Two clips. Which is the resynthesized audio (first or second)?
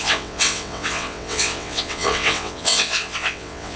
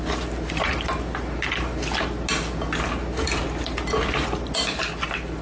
first